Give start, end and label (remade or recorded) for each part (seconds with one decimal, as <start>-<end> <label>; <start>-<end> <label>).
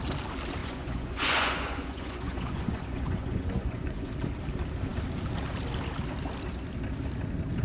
0.0-0.6 recorded; 0.6-4.1 remade; 4.1-7.6 recorded